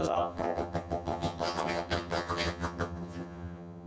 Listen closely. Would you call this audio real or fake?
fake